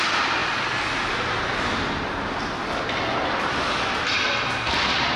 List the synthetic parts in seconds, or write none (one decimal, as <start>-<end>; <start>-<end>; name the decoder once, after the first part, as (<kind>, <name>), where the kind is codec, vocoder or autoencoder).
none